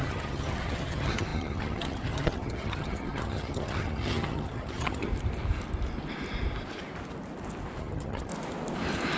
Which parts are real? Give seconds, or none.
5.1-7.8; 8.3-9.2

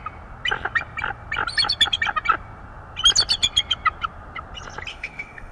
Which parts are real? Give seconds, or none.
0.0-4.9

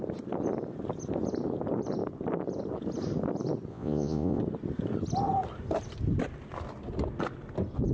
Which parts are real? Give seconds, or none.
0.0-3.7; 4.4-7.9

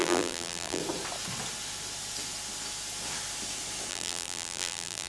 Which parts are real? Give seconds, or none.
0.8-3.9